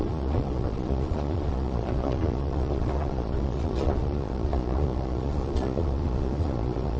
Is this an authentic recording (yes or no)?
no